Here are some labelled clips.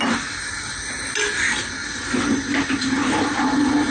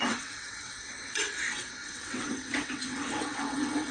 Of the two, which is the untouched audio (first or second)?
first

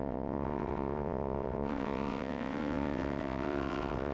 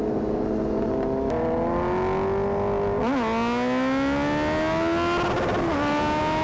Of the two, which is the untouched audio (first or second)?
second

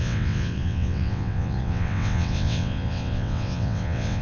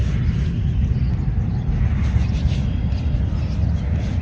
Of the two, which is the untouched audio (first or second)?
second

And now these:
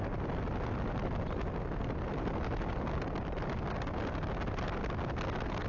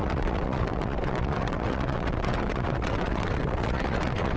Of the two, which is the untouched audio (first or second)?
first